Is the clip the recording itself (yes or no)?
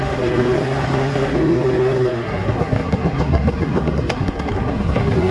no